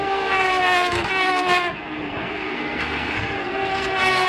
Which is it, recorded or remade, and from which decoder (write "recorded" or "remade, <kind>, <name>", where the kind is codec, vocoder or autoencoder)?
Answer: remade, codec, SNAC